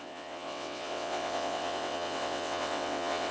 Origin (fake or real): fake